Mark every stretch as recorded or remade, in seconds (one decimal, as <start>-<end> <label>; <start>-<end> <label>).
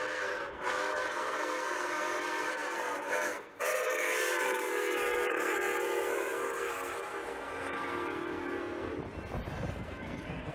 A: 0.0-8.9 remade; 8.9-9.7 recorded; 9.7-10.5 remade